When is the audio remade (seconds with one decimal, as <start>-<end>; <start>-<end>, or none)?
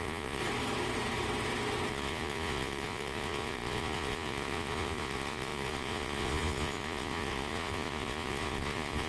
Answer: 0.0-0.4; 1.9-9.1